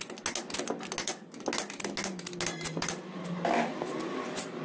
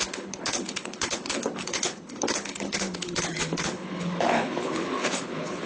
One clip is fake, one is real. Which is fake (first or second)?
second